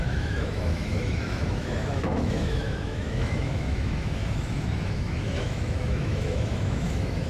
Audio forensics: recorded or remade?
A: remade